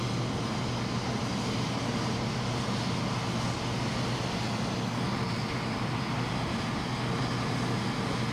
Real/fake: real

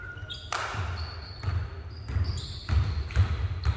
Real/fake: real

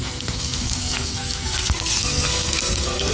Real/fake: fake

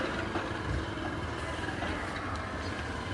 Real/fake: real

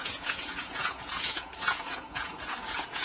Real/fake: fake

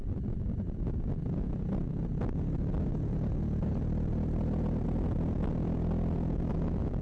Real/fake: real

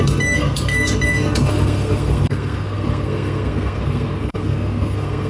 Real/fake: fake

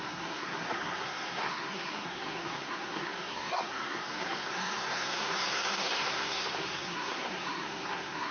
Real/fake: fake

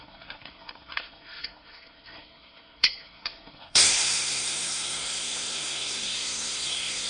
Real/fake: fake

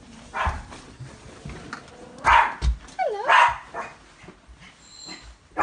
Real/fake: real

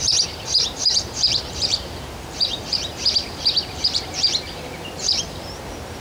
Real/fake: fake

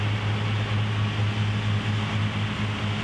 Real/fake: real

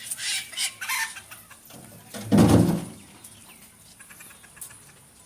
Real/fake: real